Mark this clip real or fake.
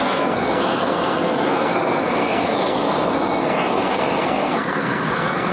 fake